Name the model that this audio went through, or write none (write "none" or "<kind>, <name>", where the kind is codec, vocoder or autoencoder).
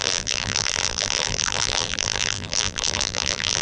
vocoder, BigVGAN v2